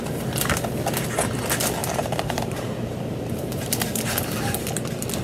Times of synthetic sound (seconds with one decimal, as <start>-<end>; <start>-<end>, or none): 1.8-4.1